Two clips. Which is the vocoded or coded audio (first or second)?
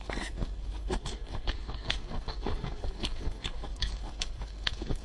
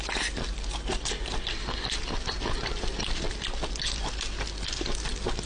first